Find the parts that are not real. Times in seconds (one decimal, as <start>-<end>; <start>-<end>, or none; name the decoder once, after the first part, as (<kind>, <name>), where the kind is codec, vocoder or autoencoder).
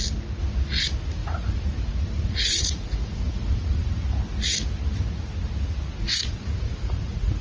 1.2-4.0 (vocoder, Vocos); 6.0-7.4